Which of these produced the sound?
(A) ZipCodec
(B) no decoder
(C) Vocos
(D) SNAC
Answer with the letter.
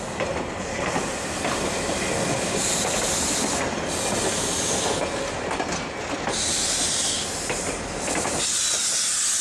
B